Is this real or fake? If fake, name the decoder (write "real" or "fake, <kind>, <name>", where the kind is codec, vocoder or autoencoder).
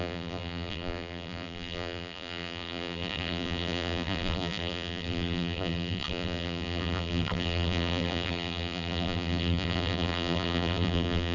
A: fake, vocoder, BigVGAN v2